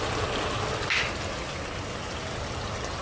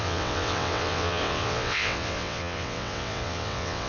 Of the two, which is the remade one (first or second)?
second